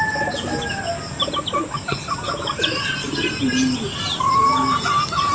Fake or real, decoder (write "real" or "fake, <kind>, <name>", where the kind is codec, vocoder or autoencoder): real